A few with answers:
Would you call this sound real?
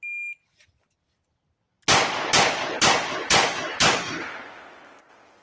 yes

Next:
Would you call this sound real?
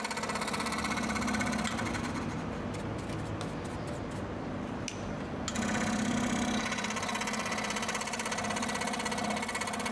yes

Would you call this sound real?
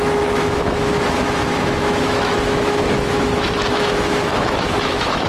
no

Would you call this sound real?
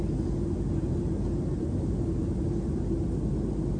yes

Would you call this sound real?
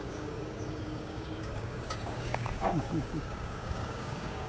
no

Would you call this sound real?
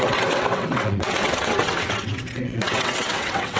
no